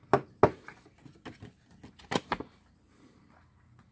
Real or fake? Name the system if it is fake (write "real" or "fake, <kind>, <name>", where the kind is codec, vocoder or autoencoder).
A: real